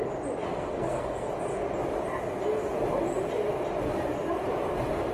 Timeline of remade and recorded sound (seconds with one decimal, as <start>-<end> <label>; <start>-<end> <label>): 0.0-0.4 recorded; 0.4-1.3 remade; 1.3-5.1 recorded

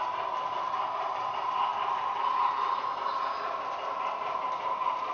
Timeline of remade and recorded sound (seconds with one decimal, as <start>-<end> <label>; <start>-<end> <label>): 0.0-5.1 recorded